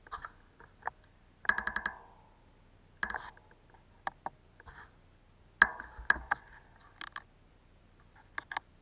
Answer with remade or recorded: recorded